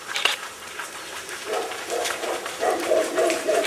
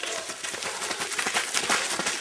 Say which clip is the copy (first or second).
first